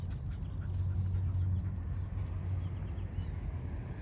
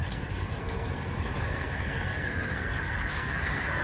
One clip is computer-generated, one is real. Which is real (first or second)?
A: first